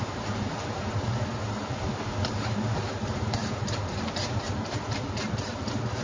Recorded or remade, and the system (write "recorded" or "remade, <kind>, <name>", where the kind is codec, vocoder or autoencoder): remade, vocoder, BigVGAN v2